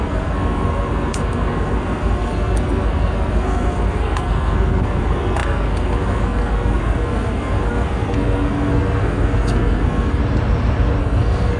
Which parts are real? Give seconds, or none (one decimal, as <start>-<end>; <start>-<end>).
10.2-11.0